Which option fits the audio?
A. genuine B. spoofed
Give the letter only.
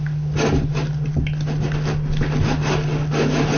A